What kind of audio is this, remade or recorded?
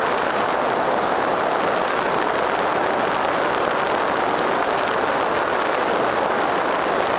recorded